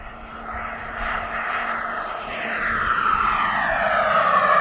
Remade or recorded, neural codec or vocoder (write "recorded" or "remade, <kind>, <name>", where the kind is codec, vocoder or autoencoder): recorded